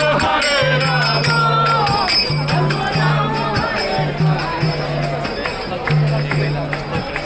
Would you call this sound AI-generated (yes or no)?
no